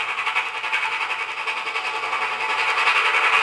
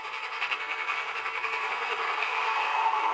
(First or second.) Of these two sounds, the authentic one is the first